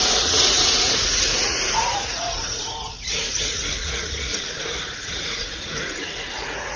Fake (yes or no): yes